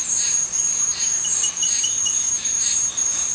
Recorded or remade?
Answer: remade